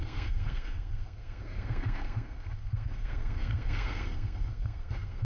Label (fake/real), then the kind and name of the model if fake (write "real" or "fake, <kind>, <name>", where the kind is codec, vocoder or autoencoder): fake, codec, SNAC